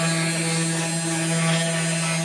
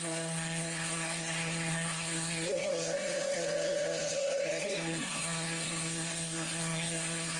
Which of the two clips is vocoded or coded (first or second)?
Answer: second